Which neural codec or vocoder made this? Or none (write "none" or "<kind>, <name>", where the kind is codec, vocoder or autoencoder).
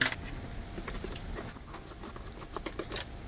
none